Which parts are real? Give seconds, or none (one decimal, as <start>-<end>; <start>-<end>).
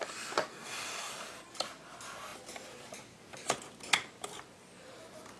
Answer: 0.0-0.5; 1.1-5.4